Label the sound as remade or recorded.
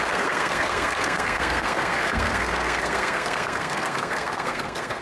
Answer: remade